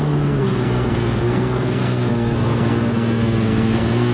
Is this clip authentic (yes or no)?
no